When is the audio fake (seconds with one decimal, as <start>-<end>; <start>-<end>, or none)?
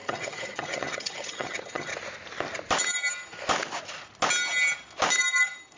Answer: 0.0-1.9